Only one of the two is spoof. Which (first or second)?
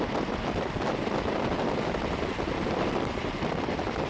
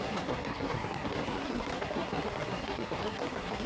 second